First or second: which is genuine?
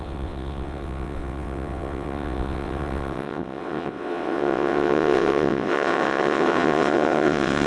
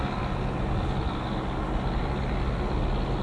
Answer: second